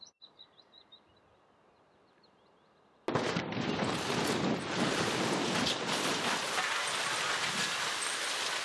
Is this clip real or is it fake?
real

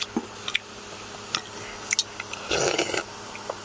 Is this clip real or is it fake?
real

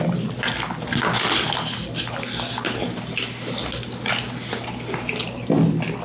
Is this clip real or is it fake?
real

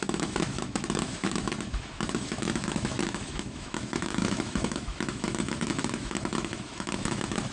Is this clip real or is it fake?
fake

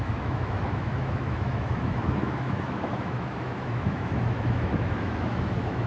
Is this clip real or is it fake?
fake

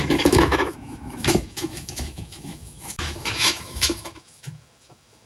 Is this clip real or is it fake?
fake